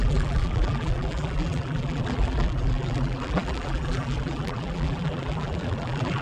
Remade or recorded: remade